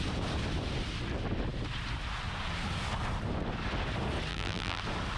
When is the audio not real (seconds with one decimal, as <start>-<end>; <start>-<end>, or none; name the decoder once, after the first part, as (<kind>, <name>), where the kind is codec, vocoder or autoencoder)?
4.3-4.8 (vocoder, BigVGAN v2)